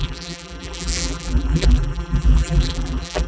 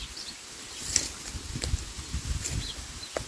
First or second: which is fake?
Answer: first